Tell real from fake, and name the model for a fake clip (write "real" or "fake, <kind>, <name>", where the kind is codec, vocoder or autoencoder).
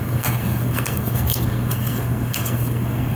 fake, codec, SNAC